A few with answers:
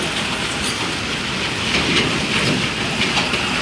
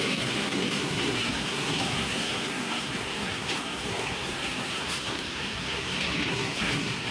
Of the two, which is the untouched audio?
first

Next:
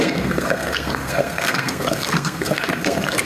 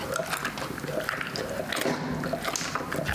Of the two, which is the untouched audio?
second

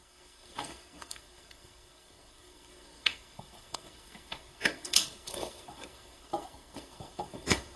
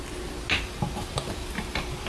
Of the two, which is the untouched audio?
second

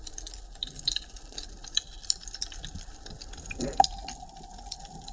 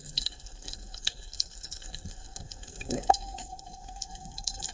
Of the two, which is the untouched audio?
first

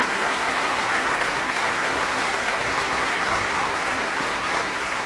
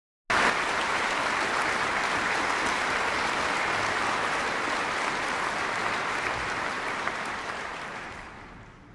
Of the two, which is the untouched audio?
second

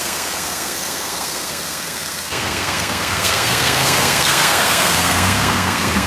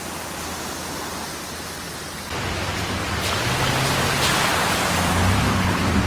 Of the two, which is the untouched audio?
second